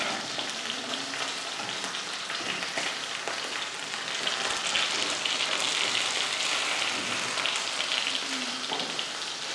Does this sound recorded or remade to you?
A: recorded